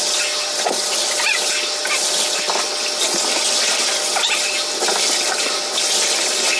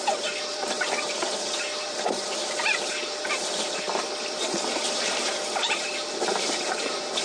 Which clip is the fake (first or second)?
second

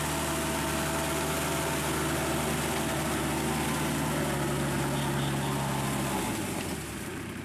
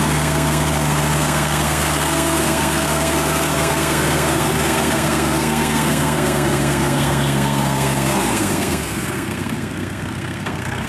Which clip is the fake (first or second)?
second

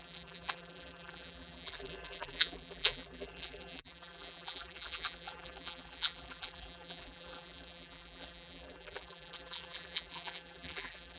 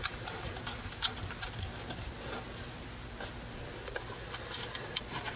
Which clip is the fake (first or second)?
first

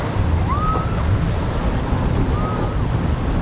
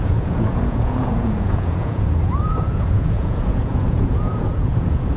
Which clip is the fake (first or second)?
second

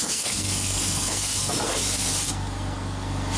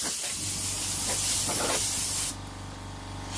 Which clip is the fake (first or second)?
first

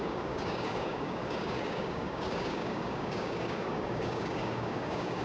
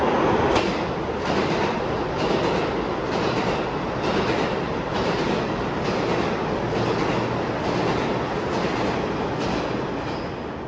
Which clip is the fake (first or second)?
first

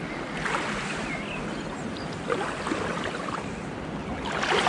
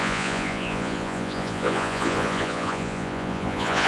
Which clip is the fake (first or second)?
second